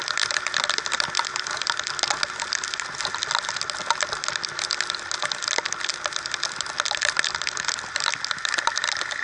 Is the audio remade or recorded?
recorded